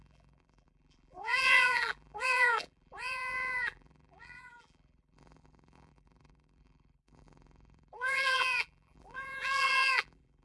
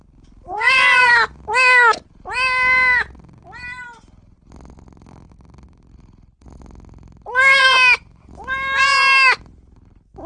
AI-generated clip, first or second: first